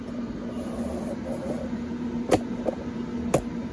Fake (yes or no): no